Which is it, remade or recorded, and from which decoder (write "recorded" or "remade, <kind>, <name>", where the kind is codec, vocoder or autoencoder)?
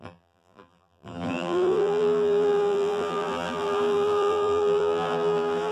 remade, vocoder, BigVGAN v2